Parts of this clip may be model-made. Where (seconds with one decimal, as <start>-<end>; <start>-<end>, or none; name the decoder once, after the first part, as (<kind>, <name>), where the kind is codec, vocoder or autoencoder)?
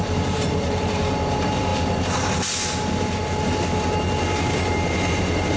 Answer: 0.0-1.7 (vocoder, BigVGAN v2); 5.1-5.6